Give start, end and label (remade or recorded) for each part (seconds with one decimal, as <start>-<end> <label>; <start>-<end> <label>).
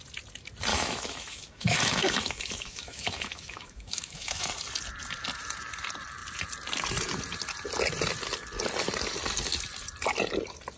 0.0-0.7 recorded; 0.7-4.5 remade; 4.5-10.8 recorded